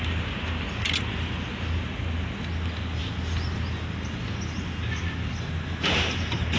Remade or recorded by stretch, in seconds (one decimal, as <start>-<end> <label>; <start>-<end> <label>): 0.0-6.6 recorded